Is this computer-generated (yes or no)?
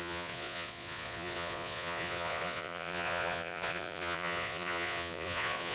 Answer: yes